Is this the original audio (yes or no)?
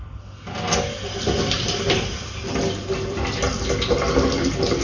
yes